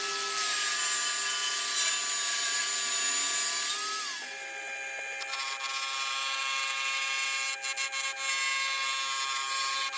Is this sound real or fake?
real